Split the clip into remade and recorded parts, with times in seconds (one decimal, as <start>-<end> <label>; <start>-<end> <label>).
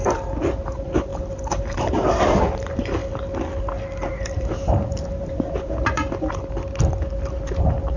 0.0-3.0 remade; 3.0-4.1 recorded; 4.1-6.0 remade; 6.0-8.0 recorded